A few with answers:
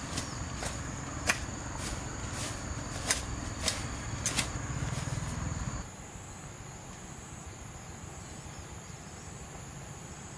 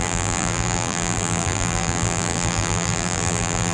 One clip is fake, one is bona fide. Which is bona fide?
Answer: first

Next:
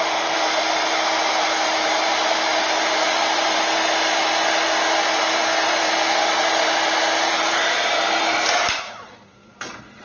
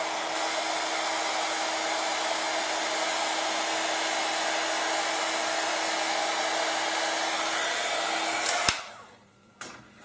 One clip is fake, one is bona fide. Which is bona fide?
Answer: second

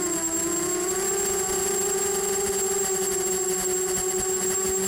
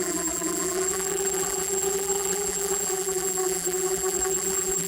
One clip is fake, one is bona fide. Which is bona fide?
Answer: first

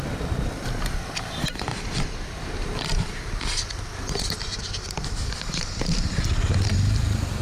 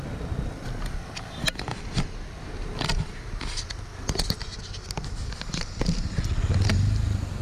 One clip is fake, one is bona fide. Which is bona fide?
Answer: second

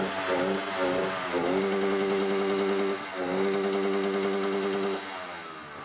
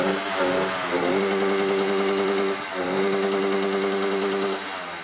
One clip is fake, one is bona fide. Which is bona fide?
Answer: first